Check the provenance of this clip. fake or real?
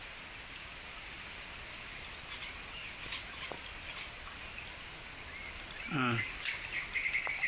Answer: real